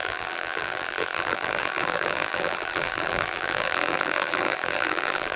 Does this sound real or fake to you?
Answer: fake